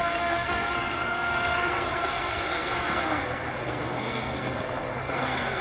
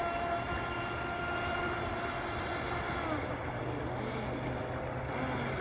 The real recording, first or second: second